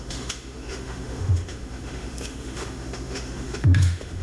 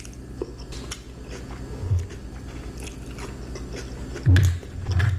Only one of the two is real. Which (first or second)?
second